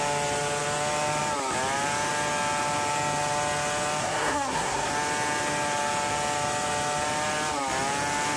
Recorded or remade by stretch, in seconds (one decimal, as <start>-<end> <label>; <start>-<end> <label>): 0.0-4.0 recorded; 4.0-4.9 remade; 4.9-8.4 recorded